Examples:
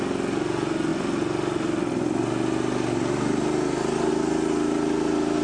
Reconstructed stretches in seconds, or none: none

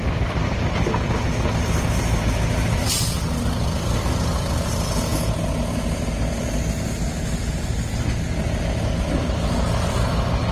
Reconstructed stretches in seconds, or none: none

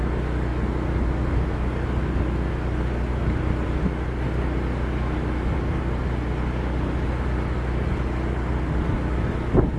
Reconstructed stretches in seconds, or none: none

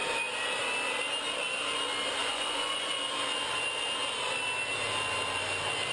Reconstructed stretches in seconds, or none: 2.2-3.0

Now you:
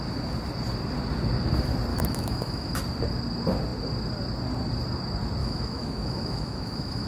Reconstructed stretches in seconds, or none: 1.9-2.8; 5.4-7.1

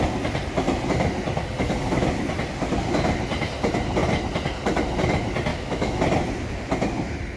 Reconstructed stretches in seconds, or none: 5.5-6.0